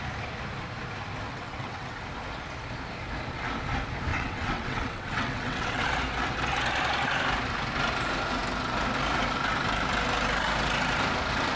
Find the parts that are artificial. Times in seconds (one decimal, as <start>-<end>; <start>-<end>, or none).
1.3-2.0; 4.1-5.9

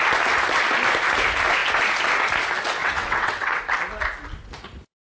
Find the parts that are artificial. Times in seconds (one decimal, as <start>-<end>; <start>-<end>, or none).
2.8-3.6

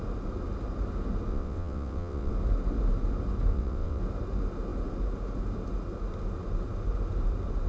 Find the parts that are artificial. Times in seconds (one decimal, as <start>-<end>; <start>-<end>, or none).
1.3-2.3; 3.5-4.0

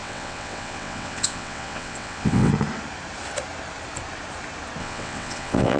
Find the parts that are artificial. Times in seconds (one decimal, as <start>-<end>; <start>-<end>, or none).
0.0-2.5; 4.8-5.8